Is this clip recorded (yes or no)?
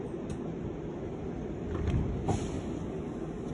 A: yes